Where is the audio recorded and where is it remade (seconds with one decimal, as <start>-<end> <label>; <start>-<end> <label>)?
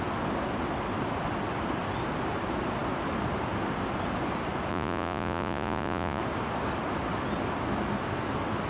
0.0-4.7 recorded; 4.7-6.2 remade; 6.2-8.7 recorded